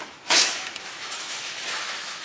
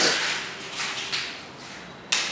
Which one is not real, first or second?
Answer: first